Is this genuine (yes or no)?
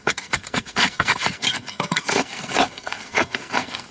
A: no